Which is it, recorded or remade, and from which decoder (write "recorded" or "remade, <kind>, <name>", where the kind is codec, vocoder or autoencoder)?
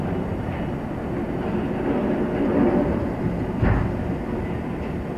recorded